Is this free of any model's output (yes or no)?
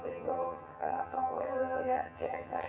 no